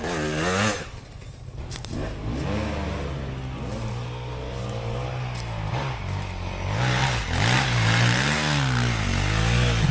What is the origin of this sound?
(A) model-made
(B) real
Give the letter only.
B